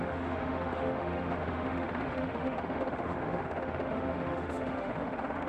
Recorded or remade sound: remade